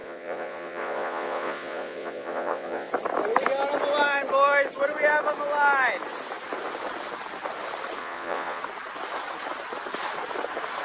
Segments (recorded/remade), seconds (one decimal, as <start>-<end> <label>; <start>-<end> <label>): 0.0-2.9 remade; 2.9-8.0 recorded; 8.0-8.6 remade; 8.6-10.8 recorded